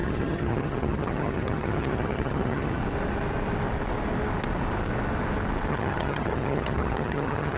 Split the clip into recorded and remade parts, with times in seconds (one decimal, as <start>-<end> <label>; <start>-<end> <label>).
0.0-2.8 remade; 2.8-5.7 recorded; 5.7-7.6 remade